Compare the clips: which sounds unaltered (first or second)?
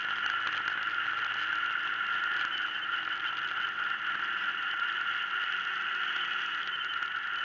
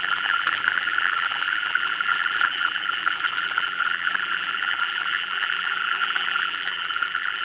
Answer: first